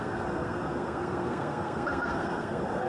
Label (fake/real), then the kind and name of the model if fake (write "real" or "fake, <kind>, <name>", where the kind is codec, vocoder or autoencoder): fake, codec, SNAC